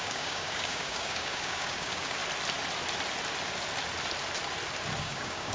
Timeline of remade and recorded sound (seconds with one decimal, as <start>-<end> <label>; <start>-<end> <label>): 0.0-2.2 remade; 2.2-5.0 recorded; 5.0-5.5 remade